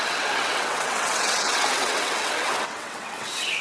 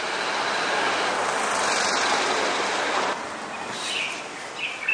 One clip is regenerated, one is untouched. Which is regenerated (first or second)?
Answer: first